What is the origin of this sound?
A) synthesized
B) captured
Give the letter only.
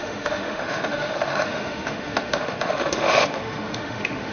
A